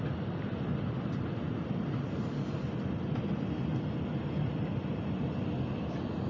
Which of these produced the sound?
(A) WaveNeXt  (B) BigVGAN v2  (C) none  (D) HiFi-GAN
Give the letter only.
C